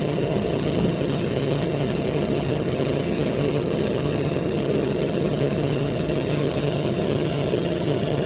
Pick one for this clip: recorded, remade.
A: remade